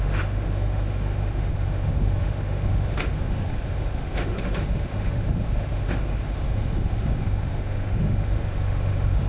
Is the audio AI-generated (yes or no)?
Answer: yes